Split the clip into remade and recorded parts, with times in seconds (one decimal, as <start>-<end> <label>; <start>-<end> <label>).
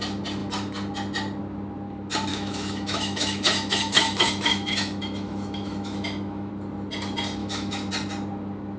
0.0-2.3 recorded; 2.3-6.5 remade; 6.5-7.4 recorded; 7.4-7.9 remade; 7.9-8.8 recorded